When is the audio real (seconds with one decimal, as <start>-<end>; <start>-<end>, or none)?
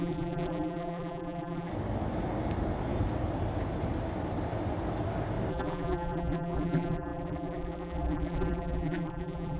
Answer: 1.7-5.5